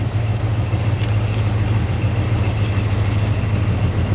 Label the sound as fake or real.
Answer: real